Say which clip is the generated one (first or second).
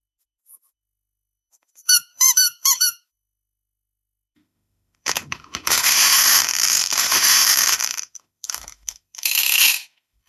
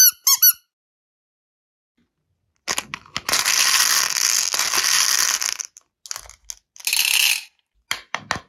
first